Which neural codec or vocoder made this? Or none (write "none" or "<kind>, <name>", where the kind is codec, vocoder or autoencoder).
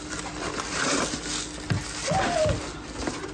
none